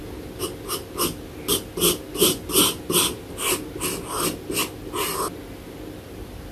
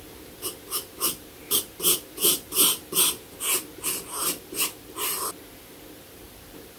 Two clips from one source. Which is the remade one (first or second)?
second